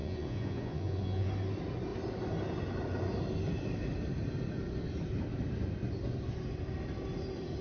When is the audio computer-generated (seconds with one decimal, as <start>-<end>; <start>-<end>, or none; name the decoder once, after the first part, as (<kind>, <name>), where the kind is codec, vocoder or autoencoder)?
0.0-1.3 (vocoder, Vocos)